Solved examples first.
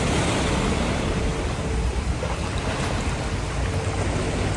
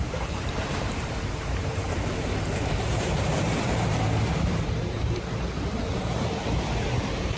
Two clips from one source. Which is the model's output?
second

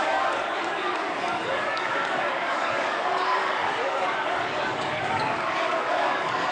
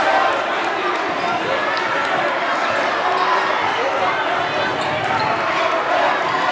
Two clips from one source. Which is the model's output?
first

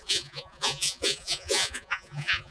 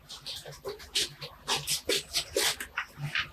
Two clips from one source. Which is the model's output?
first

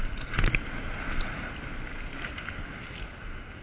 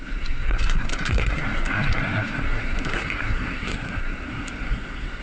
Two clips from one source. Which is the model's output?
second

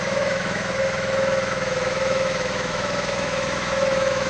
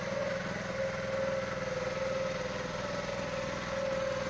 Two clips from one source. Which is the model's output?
first